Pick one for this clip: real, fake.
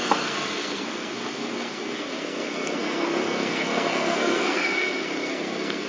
fake